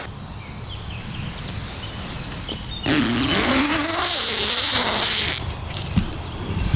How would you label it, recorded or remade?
recorded